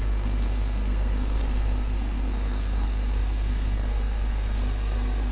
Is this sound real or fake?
fake